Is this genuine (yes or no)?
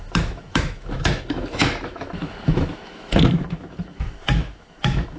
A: no